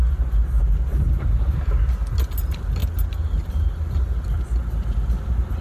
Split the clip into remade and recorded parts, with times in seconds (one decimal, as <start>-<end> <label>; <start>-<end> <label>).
0.0-5.6 recorded